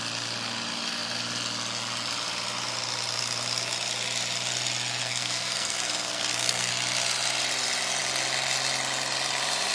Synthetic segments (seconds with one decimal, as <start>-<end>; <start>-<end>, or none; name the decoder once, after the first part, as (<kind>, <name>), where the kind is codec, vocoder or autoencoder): 5.0-6.7 (codec, SNAC)